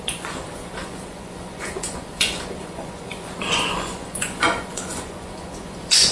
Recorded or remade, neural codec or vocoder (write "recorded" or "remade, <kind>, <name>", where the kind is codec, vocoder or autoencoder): remade, vocoder, Vocos